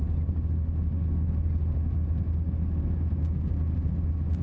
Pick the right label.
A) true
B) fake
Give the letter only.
A